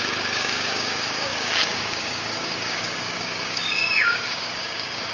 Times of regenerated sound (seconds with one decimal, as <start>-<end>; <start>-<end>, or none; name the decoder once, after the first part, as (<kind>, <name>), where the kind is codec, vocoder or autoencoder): 0.0-5.1 (codec, DAC)